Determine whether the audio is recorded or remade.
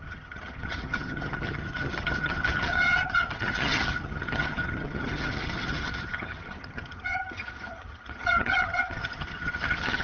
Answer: remade